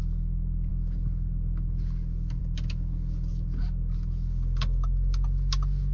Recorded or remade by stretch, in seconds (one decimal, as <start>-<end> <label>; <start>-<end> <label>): 0.0-5.9 recorded